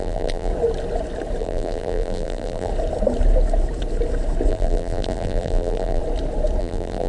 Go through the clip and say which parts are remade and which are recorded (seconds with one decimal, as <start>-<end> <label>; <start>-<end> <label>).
0.0-0.5 remade; 0.5-1.4 recorded; 1.4-2.7 remade; 2.7-4.5 recorded; 4.5-6.0 remade; 6.0-6.6 recorded; 6.6-7.1 remade